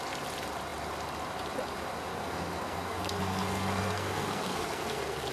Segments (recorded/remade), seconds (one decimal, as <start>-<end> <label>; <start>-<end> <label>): 0.0-2.1 recorded; 2.1-5.3 remade